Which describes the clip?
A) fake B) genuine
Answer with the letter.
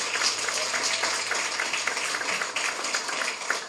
B